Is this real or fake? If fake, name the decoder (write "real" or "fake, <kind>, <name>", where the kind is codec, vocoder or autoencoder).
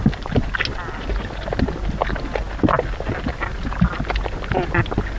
real